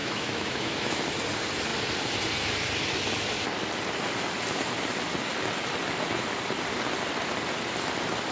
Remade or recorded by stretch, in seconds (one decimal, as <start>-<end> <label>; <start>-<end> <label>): 0.0-1.0 remade; 1.0-8.3 recorded